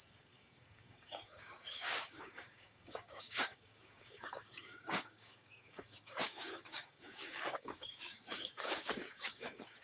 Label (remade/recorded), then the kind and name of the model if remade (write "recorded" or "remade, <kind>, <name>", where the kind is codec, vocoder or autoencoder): remade, codec, DAC